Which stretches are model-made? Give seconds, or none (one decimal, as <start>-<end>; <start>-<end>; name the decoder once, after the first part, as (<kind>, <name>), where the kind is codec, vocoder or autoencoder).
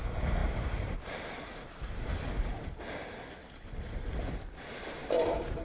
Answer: 0.4-2.8 (vocoder, BigVGAN v2); 3.4-4.1; 5.0-5.6